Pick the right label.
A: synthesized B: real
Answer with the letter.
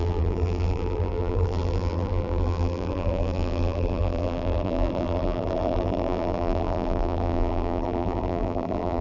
A